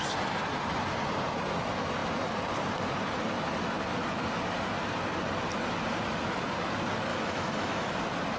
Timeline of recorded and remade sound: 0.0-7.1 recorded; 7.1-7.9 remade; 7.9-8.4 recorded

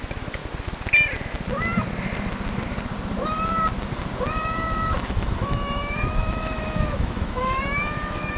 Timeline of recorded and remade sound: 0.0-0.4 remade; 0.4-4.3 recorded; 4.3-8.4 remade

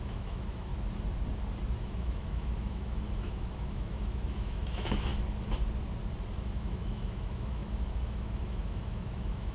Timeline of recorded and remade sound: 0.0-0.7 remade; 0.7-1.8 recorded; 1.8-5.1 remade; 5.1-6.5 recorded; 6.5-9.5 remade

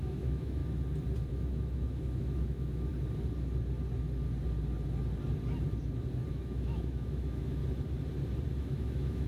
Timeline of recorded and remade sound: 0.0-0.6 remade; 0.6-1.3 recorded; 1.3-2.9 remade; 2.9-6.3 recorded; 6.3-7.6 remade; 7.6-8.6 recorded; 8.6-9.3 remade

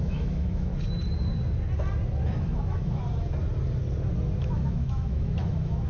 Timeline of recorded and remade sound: 0.0-0.7 remade; 0.7-2.4 recorded; 2.4-3.0 remade; 3.0-4.4 recorded; 4.4-5.9 remade